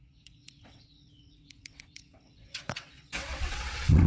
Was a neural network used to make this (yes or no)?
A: yes